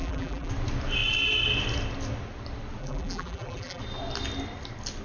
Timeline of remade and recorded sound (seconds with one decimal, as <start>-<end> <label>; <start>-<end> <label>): 0.0-0.5 remade; 0.5-2.8 recorded; 2.8-3.8 remade; 3.8-5.0 recorded